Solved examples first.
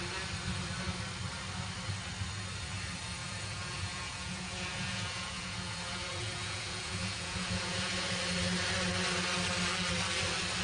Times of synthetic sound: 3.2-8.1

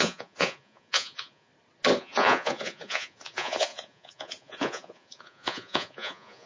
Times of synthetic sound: 0.0-1.5; 2.0-6.5